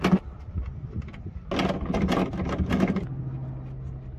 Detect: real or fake real